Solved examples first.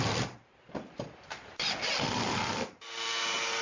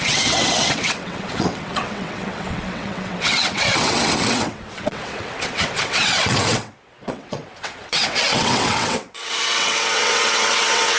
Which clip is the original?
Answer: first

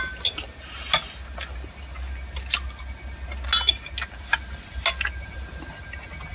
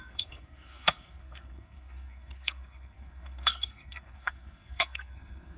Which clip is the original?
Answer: first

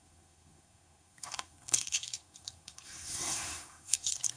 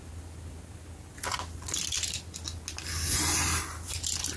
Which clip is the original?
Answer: second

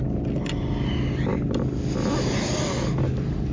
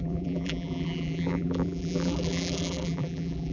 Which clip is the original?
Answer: first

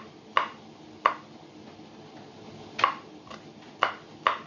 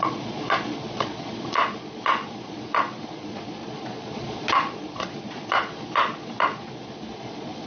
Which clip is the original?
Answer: first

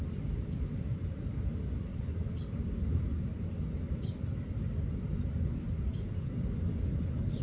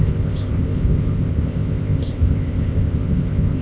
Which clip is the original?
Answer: first